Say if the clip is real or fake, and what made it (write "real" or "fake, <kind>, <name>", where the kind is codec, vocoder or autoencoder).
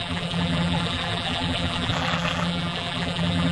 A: fake, vocoder, BigVGAN v2